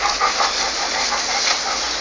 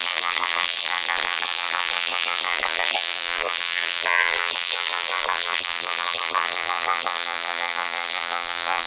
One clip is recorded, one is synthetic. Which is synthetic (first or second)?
second